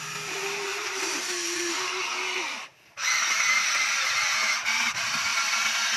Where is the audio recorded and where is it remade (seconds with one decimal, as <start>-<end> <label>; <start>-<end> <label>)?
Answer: 0.0-0.7 recorded; 0.7-1.7 remade; 1.7-2.7 recorded; 2.7-3.6 remade; 3.6-6.0 recorded